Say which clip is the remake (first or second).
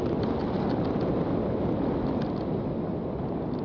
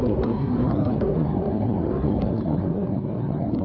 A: second